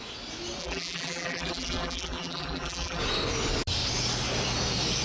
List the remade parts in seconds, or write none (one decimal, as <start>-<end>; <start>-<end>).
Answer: 0.6-3.0